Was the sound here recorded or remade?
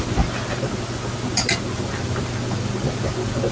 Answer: recorded